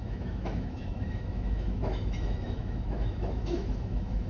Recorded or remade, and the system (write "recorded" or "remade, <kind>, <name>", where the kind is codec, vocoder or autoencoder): remade, autoencoder, DAC-VAE